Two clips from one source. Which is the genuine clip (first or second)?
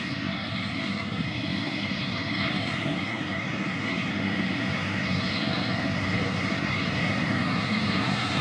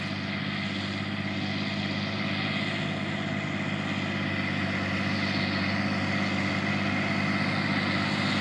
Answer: second